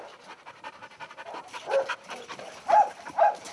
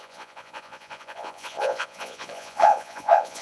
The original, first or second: first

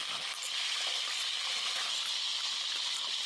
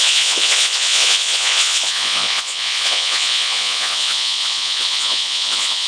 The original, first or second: first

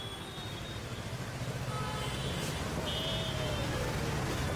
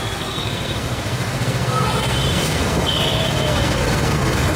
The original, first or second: first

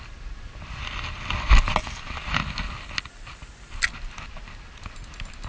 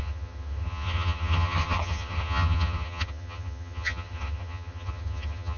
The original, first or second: first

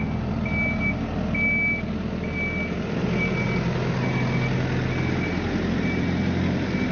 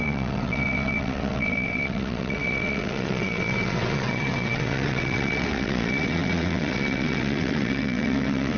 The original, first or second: first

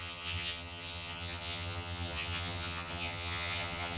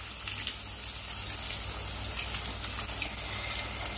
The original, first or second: second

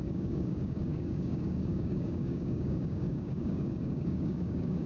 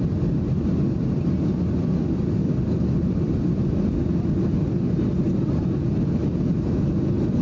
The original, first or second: second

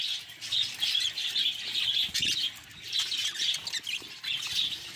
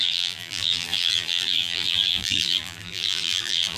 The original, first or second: first